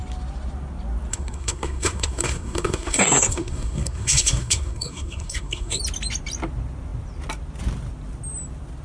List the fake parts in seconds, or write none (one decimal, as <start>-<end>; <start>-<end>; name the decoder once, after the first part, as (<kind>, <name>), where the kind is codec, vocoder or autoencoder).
1.1-5.8 (codec, SNAC)